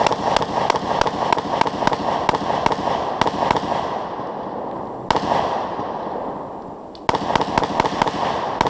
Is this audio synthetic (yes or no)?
no